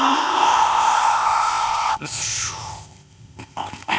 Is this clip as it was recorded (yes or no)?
no